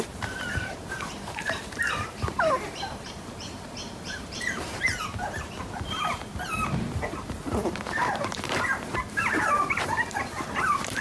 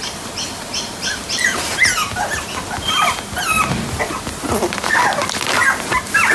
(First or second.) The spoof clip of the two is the first